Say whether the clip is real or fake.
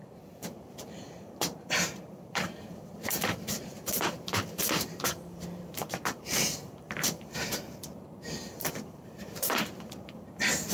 fake